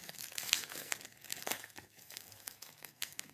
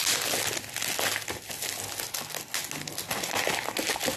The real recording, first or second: second